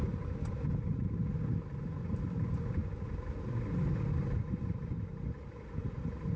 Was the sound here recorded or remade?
recorded